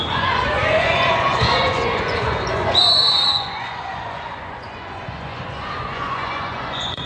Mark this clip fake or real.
fake